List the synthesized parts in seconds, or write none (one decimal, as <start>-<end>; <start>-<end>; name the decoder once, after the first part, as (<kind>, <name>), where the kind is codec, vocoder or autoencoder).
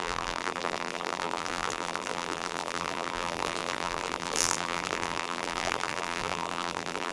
0.0-7.1 (vocoder, BigVGAN v2)